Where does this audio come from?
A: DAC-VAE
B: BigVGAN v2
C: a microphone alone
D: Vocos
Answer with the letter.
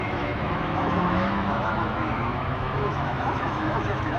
A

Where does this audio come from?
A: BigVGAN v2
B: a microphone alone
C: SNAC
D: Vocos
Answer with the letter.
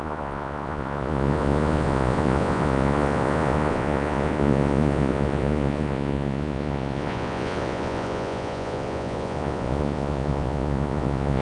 D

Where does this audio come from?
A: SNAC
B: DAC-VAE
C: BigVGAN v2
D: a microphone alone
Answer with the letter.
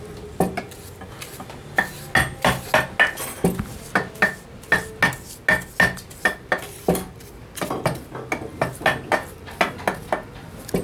D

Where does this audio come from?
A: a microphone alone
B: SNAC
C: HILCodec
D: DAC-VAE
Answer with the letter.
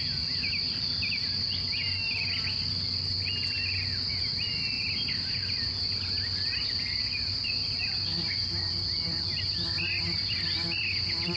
A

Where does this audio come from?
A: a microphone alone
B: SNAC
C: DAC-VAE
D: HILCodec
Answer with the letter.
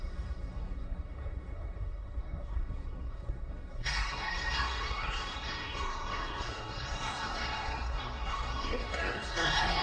B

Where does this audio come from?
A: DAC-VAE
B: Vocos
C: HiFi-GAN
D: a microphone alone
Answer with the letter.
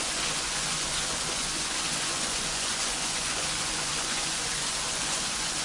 B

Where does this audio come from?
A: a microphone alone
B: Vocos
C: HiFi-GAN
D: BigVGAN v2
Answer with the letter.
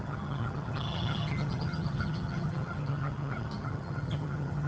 C